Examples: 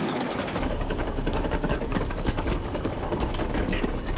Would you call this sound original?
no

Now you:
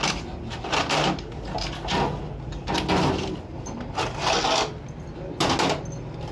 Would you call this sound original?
yes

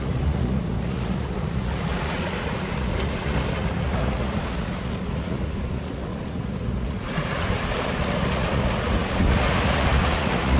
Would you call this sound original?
no